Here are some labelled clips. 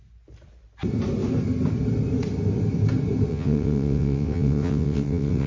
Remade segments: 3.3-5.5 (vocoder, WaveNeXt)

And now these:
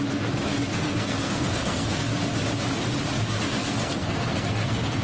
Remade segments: 0.7-2.0 (codec, SNAC); 3.6-5.0

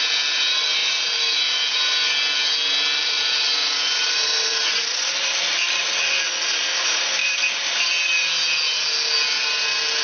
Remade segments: 0.8-1.7 (vocoder, BigVGAN v2); 3.0-5.8; 7.2-7.9

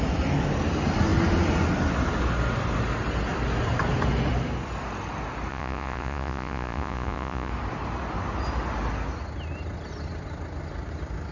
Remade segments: 5.5-7.5 (vocoder, Vocos)

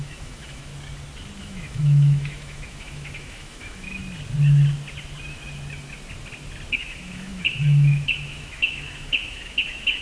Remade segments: 0.0-0.7 (autoencoder, DAC-VAE); 1.4-4.0; 6.7-10.0

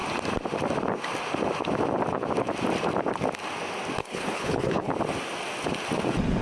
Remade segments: 4.0-4.9 (codec, HILCodec)

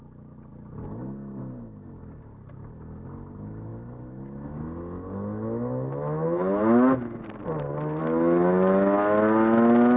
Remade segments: none

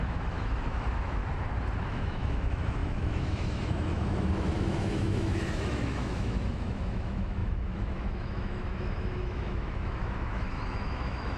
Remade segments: 0.0-1.2 (autoencoder, DAC-VAE); 1.8-11.4